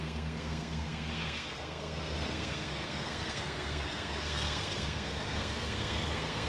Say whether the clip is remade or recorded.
remade